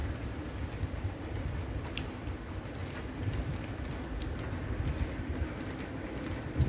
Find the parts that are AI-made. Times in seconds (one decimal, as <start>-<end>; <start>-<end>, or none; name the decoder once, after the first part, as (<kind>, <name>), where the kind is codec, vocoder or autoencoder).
none